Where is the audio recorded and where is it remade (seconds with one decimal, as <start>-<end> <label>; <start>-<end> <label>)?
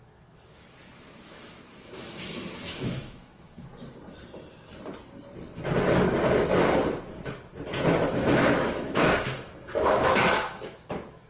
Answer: 0.0-3.7 remade; 3.7-8.0 recorded; 8.0-11.3 remade